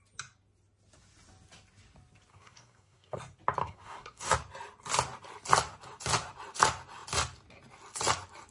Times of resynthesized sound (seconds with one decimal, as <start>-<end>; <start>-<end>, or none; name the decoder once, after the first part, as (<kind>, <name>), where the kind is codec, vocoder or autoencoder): 2.3-3.2 (codec, SNAC); 3.6-4.3

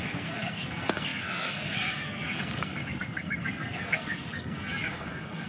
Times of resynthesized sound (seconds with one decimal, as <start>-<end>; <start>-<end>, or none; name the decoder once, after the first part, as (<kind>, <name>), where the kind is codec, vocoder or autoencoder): 0.0-5.5 (codec, SNAC)

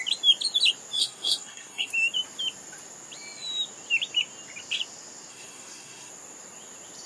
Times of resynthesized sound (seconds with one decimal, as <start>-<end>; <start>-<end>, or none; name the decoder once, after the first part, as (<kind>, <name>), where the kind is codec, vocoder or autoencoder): 1.0-1.9 (codec, SNAC); 5.3-6.1

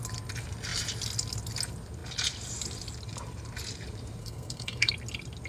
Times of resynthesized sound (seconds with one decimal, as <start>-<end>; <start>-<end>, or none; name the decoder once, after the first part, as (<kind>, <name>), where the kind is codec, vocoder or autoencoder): 4.2-4.9 (codec, SNAC)

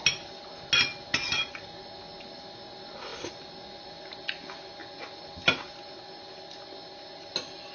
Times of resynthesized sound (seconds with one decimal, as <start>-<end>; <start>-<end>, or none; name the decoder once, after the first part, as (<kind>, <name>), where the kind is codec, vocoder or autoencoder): none

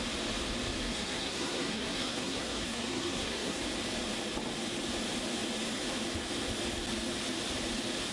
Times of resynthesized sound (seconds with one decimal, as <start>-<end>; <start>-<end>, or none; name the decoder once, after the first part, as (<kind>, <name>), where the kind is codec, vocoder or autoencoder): 0.8-3.6 (codec, SNAC)

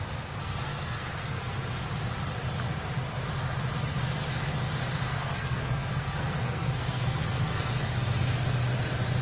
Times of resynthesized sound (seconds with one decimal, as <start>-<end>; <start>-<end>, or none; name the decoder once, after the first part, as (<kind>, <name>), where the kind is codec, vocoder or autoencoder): 0.4-1.6 (codec, SNAC); 5.1-7.7